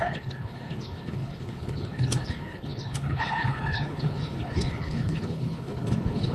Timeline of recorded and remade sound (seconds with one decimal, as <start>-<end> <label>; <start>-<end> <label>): 0.0-6.3 remade